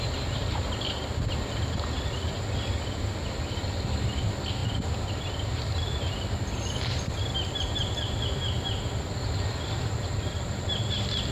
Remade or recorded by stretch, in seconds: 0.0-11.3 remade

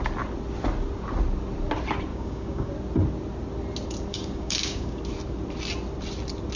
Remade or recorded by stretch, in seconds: 0.0-2.1 recorded; 2.1-2.7 remade; 2.7-4.1 recorded; 4.1-5.0 remade; 5.0-6.6 recorded

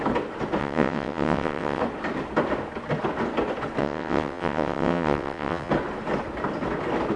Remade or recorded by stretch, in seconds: 0.0-0.6 recorded; 0.6-1.8 remade; 1.8-3.8 recorded; 3.8-5.7 remade; 5.7-7.2 recorded

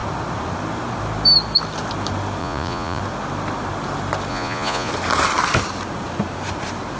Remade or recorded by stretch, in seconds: 0.0-2.4 recorded; 2.4-3.0 remade; 3.0-4.3 recorded; 4.3-4.9 remade; 4.9-7.0 recorded